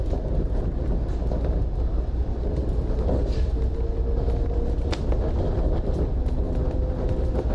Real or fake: real